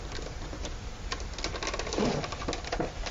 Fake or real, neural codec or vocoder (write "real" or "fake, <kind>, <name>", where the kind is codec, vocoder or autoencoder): real